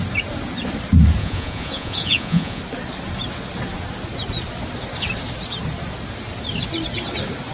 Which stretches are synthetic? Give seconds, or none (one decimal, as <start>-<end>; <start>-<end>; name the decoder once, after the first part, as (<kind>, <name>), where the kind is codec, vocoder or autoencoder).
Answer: 1.2-2.6 (vocoder, Vocos)